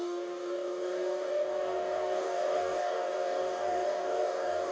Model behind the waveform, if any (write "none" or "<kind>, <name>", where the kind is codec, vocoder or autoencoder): codec, DAC